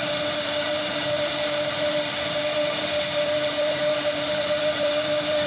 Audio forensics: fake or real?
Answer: fake